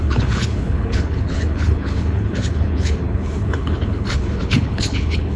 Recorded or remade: remade